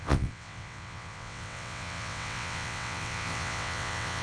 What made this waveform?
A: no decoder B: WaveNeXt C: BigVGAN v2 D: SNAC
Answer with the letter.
B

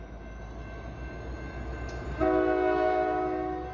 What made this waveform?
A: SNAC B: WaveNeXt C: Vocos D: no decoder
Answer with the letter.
D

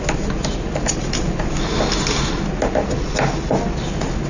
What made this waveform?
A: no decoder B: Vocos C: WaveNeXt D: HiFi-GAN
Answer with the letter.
A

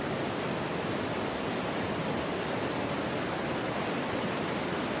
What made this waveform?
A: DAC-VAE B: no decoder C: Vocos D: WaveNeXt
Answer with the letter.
B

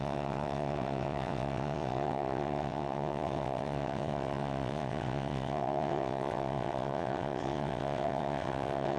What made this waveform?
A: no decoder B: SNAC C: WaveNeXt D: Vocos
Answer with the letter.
C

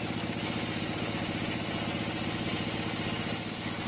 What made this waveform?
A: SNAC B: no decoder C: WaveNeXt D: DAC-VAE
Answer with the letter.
B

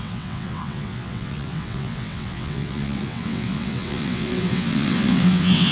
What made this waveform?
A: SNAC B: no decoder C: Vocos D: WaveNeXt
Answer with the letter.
D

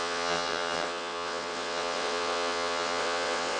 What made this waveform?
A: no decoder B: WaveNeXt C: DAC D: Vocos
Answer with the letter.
B